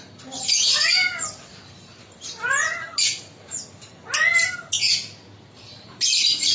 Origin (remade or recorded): recorded